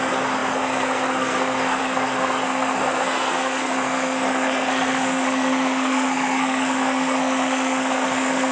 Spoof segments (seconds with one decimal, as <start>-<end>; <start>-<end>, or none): 0.0-8.5